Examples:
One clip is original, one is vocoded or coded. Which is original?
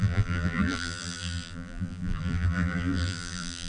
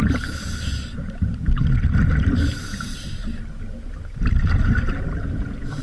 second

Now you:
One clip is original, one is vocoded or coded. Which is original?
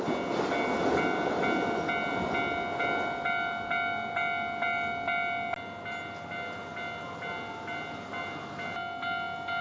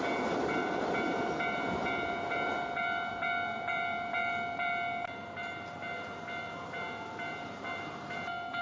first